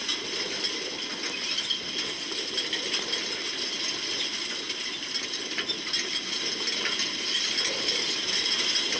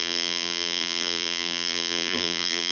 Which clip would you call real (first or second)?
first